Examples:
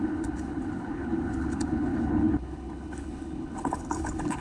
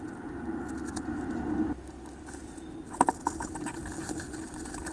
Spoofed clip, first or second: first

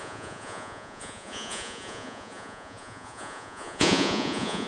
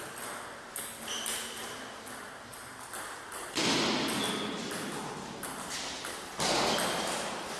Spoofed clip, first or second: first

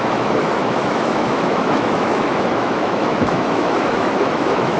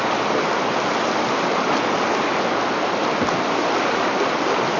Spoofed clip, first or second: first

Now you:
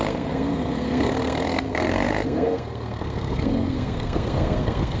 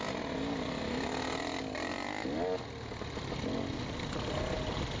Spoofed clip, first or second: first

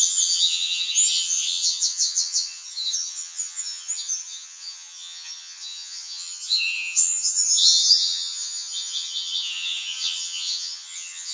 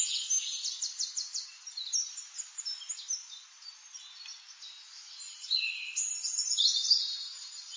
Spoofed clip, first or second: first